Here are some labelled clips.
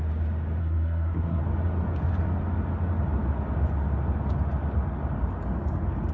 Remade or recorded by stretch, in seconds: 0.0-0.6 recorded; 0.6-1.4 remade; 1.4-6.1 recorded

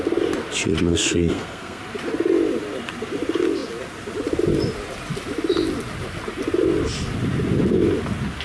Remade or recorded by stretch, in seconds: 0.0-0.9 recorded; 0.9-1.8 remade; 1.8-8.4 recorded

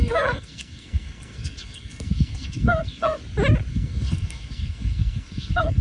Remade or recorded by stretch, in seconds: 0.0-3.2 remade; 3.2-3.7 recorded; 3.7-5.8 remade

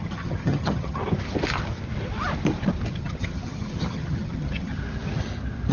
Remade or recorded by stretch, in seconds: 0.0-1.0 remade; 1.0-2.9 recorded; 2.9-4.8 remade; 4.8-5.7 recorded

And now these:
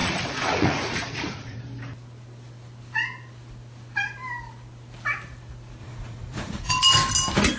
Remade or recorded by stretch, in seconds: 0.0-1.6 remade; 1.6-5.8 recorded; 5.8-6.7 remade; 6.7-7.6 recorded

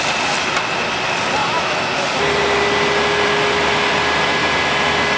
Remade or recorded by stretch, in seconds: 0.0-1.4 recorded; 1.4-2.2 remade; 2.2-5.2 recorded

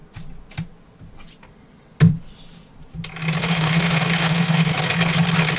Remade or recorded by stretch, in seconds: 0.0-3.4 recorded; 3.4-4.7 remade; 4.7-5.6 recorded